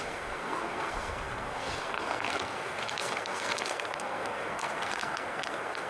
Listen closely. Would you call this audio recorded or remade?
remade